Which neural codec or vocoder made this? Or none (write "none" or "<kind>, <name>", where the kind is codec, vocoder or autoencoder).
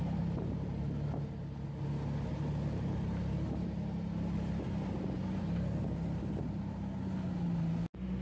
none